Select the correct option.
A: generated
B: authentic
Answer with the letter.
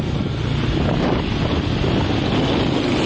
B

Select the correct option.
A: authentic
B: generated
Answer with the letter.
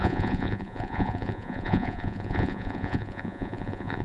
B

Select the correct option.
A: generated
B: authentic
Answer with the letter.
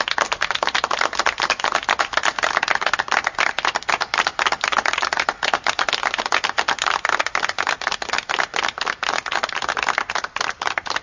B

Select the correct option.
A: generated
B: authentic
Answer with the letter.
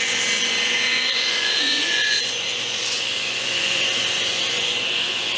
A